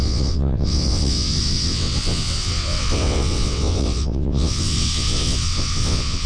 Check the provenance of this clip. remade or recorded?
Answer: remade